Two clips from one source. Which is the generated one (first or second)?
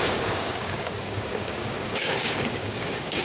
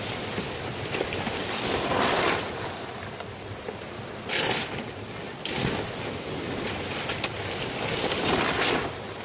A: first